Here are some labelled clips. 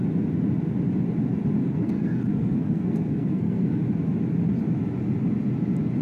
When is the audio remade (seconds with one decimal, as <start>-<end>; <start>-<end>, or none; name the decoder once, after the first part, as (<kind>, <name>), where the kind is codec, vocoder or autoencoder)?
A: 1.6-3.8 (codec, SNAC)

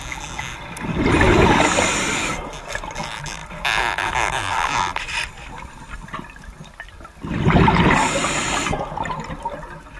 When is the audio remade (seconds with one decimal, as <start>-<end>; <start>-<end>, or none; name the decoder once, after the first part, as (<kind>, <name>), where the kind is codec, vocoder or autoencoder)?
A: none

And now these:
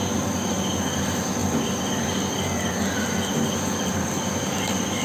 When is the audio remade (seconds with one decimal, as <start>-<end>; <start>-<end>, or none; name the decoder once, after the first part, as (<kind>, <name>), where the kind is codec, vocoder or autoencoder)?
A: none

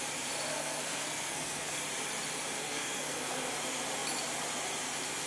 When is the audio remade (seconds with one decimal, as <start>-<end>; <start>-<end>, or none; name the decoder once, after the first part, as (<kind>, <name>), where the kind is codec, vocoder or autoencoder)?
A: 0.5-1.8 (codec, SNAC); 2.6-3.5